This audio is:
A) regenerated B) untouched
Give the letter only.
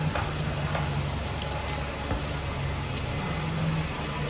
B